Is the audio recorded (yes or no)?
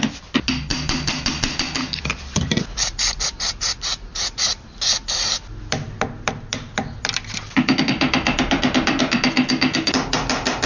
no